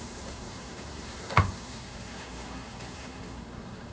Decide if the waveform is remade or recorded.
remade